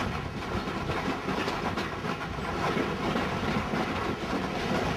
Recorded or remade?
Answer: recorded